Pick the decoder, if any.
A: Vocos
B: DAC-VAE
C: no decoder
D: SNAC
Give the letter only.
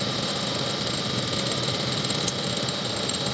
C